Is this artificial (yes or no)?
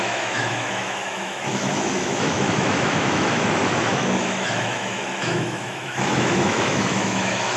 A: yes